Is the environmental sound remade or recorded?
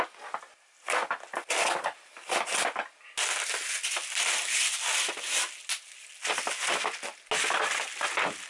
recorded